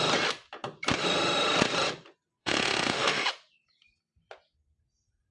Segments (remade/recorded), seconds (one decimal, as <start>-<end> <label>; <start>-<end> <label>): 0.0-2.4 recorded; 2.4-3.3 remade; 3.3-5.3 recorded